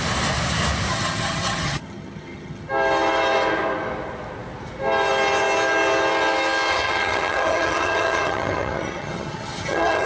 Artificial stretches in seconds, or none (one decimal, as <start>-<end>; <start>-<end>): 0.9-2.7; 6.7-10.1